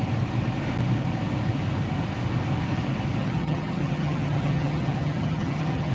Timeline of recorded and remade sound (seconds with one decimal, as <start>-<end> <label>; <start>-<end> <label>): 0.0-3.2 recorded; 3.2-5.9 remade